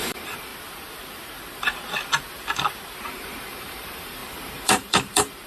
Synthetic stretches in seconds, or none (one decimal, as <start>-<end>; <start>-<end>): 0.0-0.5; 3.0-5.5